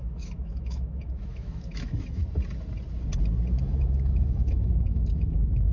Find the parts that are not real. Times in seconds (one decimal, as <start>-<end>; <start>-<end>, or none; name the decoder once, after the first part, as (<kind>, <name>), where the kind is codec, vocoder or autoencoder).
0.0-2.2 (autoencoder, DAC-VAE); 3.6-5.7